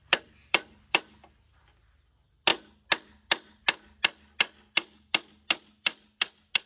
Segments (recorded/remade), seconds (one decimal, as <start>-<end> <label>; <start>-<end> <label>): 0.0-1.0 remade; 1.0-6.7 recorded